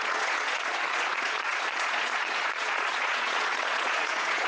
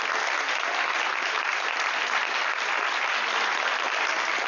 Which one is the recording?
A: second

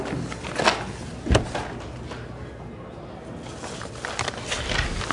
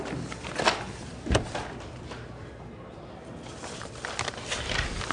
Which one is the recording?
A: first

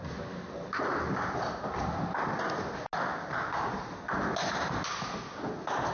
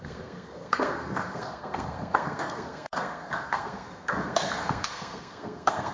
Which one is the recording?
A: first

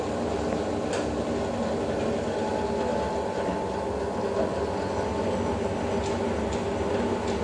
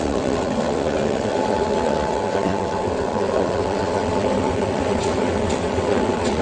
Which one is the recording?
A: first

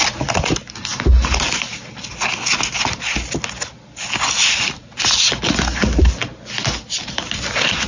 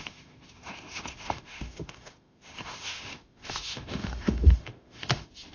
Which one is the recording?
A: first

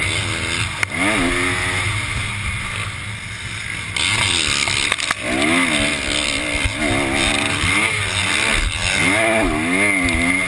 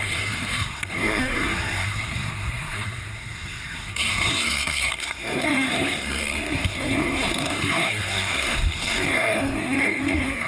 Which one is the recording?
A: first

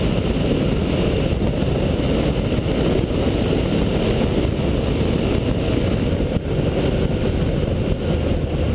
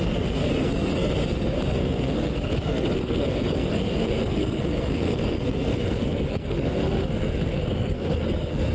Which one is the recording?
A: first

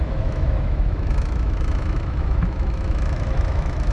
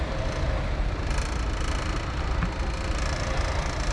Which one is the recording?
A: second